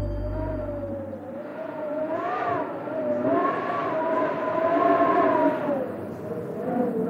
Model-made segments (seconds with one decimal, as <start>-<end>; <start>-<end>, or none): 1.5-2.3